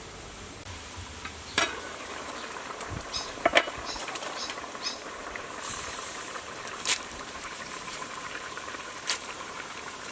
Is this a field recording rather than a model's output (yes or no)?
no